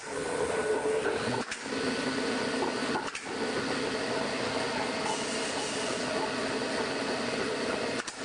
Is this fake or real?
real